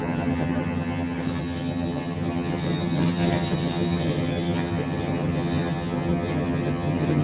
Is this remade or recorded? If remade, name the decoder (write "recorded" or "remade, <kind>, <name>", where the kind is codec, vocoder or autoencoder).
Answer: remade, vocoder, HiFi-GAN